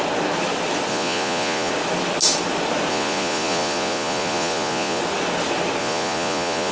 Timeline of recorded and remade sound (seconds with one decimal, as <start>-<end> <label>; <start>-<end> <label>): 0.0-0.9 recorded; 0.9-1.7 remade; 1.7-2.9 recorded; 2.9-5.0 remade; 5.0-5.8 recorded; 5.8-6.7 remade